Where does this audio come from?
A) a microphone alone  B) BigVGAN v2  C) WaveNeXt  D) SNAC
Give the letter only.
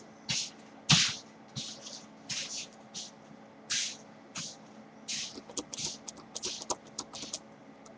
A